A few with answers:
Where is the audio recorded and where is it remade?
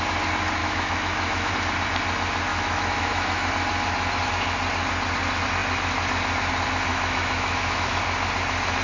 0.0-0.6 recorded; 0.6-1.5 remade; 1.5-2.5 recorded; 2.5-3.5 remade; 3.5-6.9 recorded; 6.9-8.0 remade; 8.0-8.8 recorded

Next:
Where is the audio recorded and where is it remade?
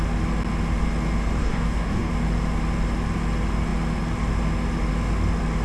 0.0-1.4 recorded; 1.4-2.1 remade; 2.1-5.6 recorded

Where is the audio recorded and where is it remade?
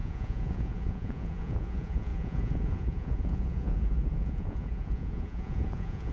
0.0-6.1 remade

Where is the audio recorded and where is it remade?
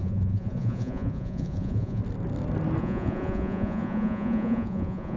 0.0-2.0 remade; 2.0-2.8 recorded; 2.8-5.2 remade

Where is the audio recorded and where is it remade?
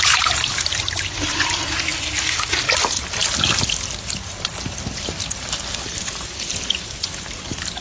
0.0-1.9 remade; 1.9-6.0 recorded; 6.0-7.8 remade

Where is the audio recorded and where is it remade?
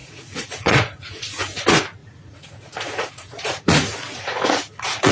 0.0-1.6 remade; 1.6-2.0 recorded; 2.0-5.1 remade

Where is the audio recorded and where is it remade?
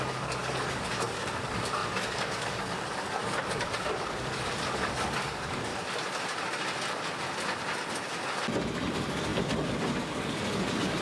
0.0-5.7 remade; 5.7-8.9 recorded; 8.9-11.0 remade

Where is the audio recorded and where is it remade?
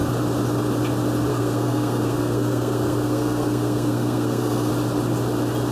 0.0-1.3 recorded; 1.3-4.7 remade; 4.7-5.7 recorded